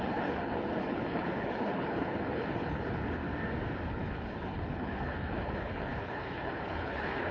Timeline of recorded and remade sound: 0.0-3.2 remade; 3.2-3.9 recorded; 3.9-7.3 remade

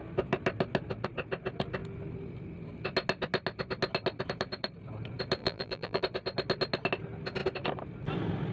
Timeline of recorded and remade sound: 0.0-5.4 recorded; 5.4-6.0 remade; 6.0-8.5 recorded